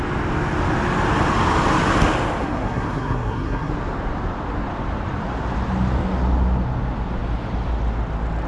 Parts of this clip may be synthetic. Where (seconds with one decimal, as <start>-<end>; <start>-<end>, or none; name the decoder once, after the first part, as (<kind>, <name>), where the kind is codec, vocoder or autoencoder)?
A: 2.4-3.7 (codec, SNAC)